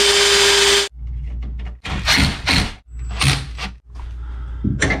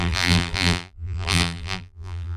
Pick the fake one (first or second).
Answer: second